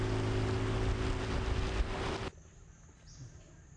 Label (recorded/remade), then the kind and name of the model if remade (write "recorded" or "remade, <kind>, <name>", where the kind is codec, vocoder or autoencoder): recorded